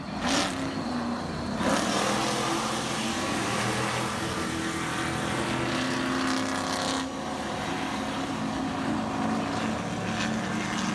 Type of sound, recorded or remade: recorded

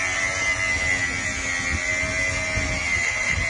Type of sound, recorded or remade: recorded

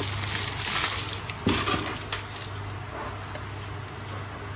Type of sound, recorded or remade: recorded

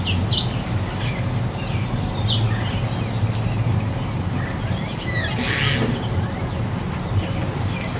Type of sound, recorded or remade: recorded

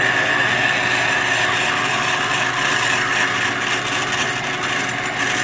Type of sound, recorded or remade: recorded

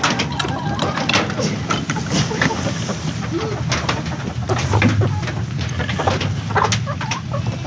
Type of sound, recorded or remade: recorded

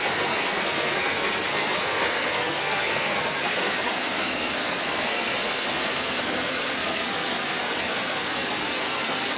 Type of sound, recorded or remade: remade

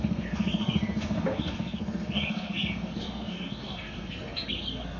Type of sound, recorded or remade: remade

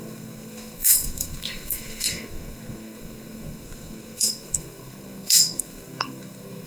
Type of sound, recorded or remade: remade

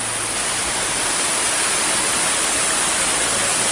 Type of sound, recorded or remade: recorded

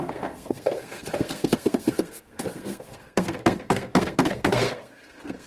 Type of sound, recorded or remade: remade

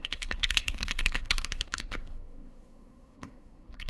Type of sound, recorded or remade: remade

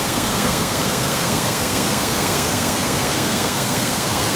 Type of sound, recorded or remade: remade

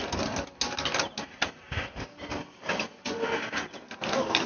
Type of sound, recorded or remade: recorded